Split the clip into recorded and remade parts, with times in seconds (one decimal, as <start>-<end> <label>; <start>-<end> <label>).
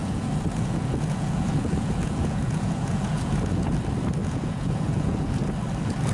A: 0.0-3.7 remade; 3.7-4.2 recorded; 4.2-5.4 remade; 5.4-6.1 recorded